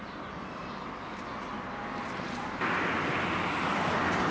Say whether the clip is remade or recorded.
recorded